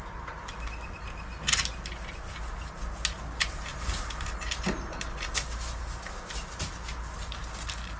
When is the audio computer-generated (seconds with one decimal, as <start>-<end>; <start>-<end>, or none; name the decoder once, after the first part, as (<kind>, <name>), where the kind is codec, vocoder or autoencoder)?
none